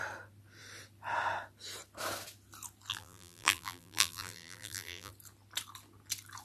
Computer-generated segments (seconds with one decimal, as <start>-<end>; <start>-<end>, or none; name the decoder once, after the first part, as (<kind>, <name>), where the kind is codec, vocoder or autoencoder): 2.9-5.1 (vocoder, BigVGAN v2)